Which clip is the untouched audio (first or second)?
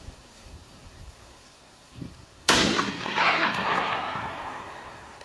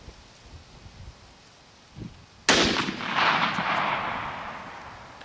second